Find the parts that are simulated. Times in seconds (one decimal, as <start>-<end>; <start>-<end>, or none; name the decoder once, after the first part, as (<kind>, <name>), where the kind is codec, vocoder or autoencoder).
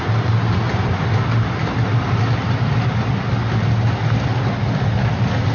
none